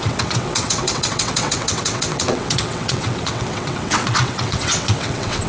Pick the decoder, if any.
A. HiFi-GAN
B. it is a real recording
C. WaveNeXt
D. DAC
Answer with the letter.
C